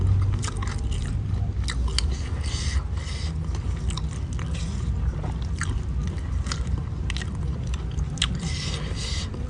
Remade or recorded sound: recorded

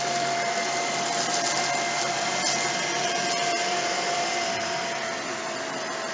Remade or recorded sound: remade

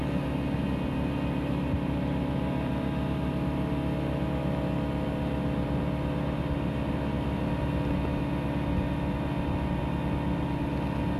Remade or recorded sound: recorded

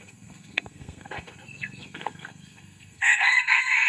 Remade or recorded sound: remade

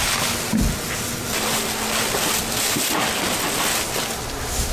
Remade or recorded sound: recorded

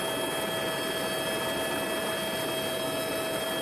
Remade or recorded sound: recorded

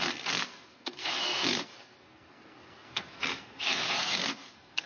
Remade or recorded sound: remade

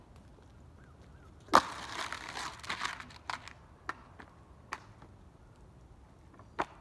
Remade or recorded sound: recorded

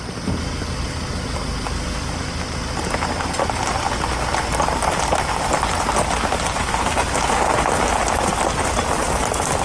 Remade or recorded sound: recorded